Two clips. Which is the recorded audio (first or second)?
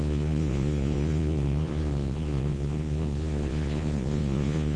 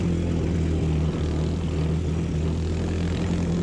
second